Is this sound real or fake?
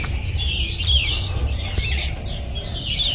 real